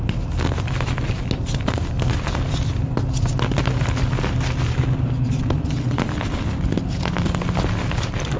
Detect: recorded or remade recorded